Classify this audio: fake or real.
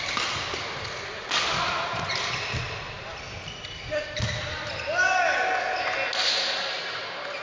real